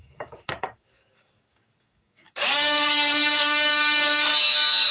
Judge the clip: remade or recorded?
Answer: remade